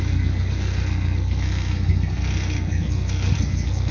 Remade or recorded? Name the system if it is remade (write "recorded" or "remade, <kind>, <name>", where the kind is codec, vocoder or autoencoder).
remade, codec, SNAC